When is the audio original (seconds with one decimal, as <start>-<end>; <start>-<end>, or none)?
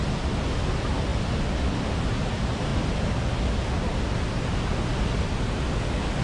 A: 0.0-6.2